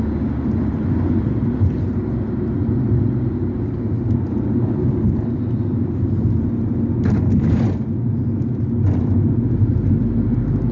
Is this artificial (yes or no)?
no